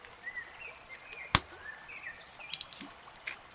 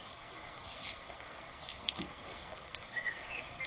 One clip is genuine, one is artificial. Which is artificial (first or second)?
second